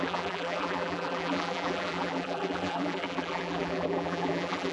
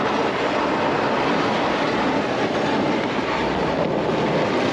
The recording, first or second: second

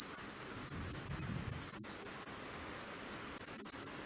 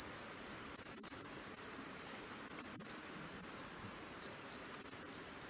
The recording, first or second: first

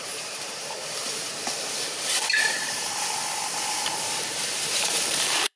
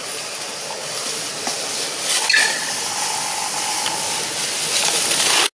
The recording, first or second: second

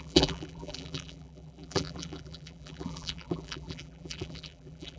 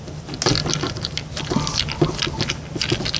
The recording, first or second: second